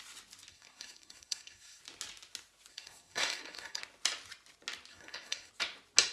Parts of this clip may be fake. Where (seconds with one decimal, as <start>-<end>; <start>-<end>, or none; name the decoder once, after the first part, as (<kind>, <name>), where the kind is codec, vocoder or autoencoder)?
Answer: 0.5-1.8 (codec, SNAC); 2.7-3.8; 4.9-5.5